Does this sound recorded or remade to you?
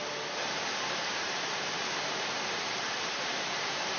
remade